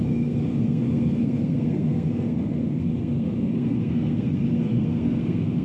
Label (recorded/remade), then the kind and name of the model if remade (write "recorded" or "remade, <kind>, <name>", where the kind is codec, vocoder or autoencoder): remade, codec, SNAC